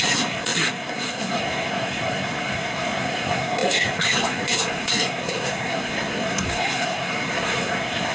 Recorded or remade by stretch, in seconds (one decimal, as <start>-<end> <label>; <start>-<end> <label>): 0.0-8.1 remade